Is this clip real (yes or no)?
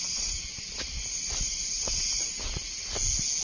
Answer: yes